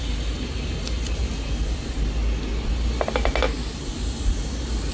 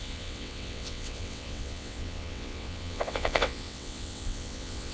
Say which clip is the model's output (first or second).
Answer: second